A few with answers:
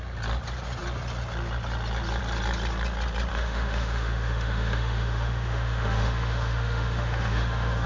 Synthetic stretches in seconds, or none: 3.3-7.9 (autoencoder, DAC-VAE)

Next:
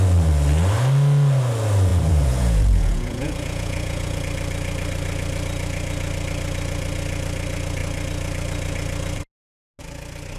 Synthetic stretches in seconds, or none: 1.9-4.2 (vocoder, Vocos)

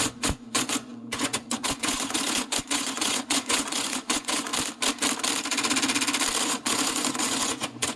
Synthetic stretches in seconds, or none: 0.0-4.5 (vocoder, Vocos); 6.4-8.0